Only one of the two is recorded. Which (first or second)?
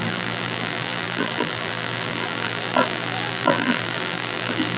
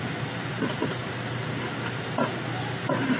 second